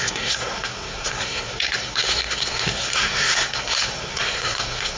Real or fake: fake